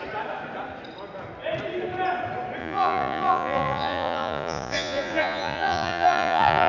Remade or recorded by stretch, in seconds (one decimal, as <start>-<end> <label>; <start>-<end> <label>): 0.0-2.6 recorded; 2.6-6.7 remade